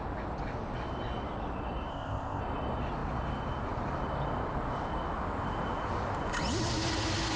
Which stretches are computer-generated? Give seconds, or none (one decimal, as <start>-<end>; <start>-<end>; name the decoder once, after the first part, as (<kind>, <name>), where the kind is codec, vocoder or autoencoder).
1.9-2.4 (codec, ZipCodec)